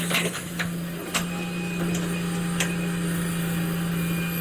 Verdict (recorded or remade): recorded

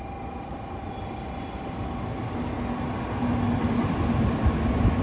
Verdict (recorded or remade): recorded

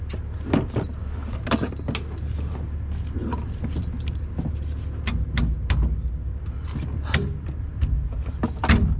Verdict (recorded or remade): recorded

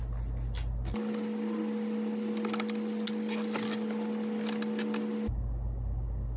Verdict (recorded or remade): recorded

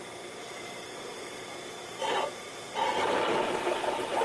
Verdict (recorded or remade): remade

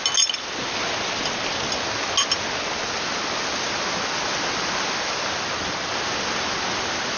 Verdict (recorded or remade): recorded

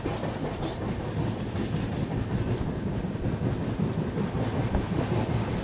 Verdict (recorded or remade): recorded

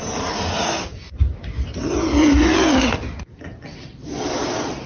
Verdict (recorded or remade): recorded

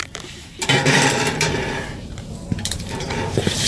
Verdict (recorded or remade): remade